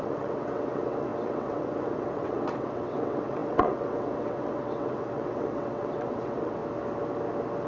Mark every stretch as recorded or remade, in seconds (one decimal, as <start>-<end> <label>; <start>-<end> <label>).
0.0-6.6 remade; 6.6-7.7 recorded